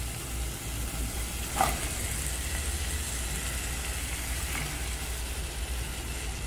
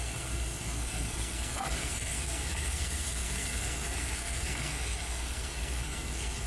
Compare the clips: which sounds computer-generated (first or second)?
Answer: second